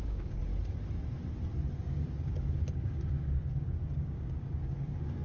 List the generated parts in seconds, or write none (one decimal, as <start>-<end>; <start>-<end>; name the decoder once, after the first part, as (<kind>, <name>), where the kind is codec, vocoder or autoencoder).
0.0-0.5 (codec, DAC); 1.8-5.2

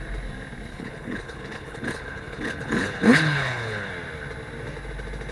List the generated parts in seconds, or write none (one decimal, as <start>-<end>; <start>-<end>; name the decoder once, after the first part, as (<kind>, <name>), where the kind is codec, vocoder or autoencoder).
0.7-3.9 (codec, HILCodec)

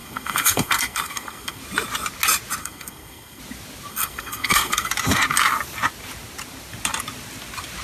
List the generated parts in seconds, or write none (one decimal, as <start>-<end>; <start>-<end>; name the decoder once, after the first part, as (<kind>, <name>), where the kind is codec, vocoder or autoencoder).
0.0-1.6 (codec, SNAC); 2.6-3.4; 3.9-4.9

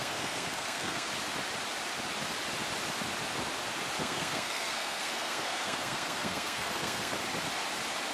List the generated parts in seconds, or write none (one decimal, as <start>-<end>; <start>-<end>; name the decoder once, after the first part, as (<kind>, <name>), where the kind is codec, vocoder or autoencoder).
0.0-1.1 (codec, SNAC); 4.0-7.1

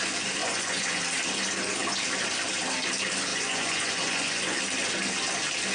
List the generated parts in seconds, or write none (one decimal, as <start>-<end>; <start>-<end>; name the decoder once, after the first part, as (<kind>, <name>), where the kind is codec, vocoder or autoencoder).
0.4-1.0 (vocoder, Vocos); 3.3-4.6

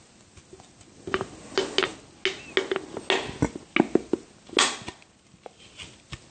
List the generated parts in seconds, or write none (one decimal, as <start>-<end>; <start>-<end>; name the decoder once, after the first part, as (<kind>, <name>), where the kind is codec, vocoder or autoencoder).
none

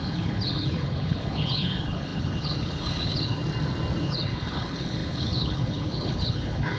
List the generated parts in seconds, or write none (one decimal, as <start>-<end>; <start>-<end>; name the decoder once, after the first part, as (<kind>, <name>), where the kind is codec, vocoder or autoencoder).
0.0-3.4 (codec, HILCodec); 4.0-6.8

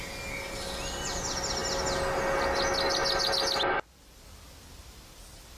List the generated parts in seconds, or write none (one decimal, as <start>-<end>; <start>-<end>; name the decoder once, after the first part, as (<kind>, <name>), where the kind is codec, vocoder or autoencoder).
none